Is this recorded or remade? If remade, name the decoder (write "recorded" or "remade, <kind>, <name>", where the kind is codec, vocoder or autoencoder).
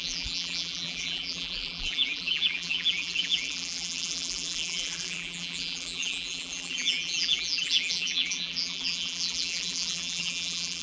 remade, vocoder, BigVGAN v2